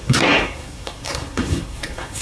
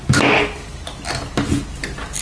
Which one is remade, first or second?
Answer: first